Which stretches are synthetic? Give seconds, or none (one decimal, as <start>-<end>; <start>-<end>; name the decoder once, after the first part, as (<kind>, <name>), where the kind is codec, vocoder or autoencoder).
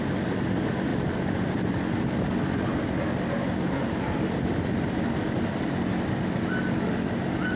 none